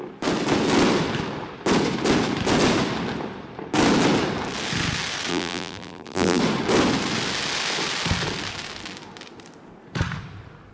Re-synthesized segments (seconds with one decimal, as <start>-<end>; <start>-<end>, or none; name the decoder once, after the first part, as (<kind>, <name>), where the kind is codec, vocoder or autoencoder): 5.3-6.4 (vocoder, BigVGAN v2)